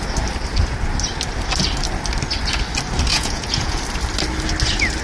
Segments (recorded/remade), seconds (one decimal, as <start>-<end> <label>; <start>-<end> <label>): 0.0-3.1 recorded; 3.1-3.8 remade; 3.8-5.0 recorded

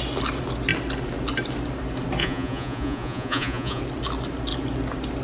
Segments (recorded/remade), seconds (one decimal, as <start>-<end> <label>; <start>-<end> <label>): 0.0-2.2 recorded; 2.2-3.8 remade; 3.8-5.2 recorded

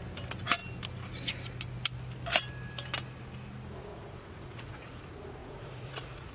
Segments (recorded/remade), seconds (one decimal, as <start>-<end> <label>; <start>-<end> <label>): 0.0-3.9 recorded; 3.9-5.0 remade; 5.0-5.4 recorded; 5.4-6.3 remade